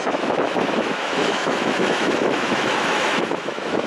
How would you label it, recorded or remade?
remade